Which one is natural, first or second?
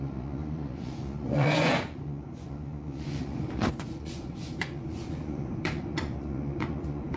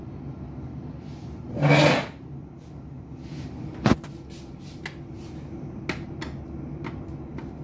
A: second